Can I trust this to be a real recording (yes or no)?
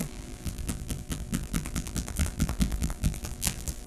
no